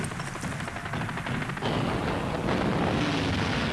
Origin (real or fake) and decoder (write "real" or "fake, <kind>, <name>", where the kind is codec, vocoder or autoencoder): real